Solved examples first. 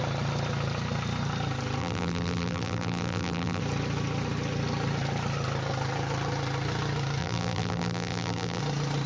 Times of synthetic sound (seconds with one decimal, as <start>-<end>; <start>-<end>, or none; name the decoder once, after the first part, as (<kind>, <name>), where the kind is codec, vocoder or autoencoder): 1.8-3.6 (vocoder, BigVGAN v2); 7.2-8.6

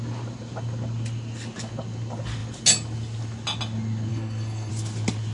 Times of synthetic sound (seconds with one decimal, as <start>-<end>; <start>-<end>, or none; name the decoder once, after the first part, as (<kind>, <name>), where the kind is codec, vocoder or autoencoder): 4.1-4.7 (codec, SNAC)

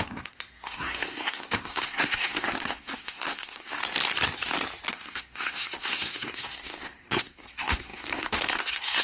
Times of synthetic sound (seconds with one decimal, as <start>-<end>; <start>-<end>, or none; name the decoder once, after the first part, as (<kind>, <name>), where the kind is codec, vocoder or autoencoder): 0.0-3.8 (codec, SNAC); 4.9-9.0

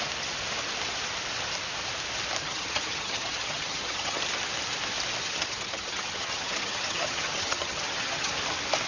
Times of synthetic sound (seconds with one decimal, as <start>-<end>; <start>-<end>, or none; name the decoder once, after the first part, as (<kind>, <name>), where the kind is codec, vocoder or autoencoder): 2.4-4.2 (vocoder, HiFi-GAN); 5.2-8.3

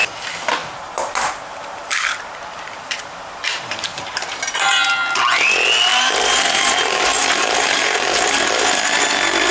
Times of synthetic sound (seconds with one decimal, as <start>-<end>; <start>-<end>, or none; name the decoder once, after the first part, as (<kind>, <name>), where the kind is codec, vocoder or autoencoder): 0.6-4.5 (vocoder, BigVGAN v2); 5.9-8.4